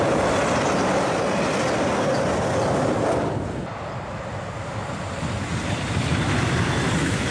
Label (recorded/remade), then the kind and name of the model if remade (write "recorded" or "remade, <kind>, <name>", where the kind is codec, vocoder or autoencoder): recorded